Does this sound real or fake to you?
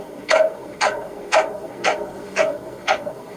fake